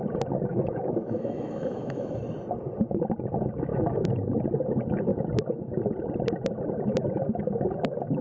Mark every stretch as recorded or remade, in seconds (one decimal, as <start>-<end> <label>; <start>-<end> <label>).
0.0-0.5 recorded; 0.5-2.2 remade; 2.2-3.7 recorded; 3.7-4.4 remade; 4.4-5.1 recorded; 5.1-5.8 remade; 5.8-8.2 recorded